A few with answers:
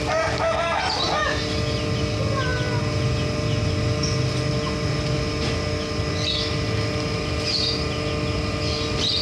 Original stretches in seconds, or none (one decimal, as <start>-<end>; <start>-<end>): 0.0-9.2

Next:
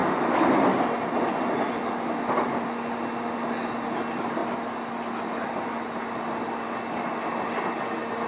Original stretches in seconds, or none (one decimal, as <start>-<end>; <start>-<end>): 0.5-8.3

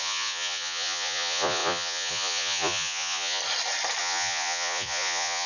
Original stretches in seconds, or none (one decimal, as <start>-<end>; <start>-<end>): 3.4-4.0

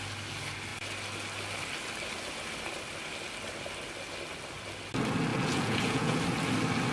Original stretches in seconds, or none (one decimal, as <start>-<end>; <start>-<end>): 0.0-5.3; 6.2-6.9

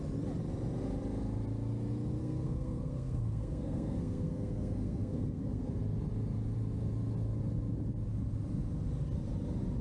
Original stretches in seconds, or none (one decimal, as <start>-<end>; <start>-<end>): 0.0-2.2; 5.7-9.8

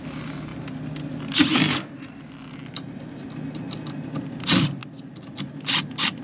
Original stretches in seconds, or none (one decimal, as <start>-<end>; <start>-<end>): 0.0-6.2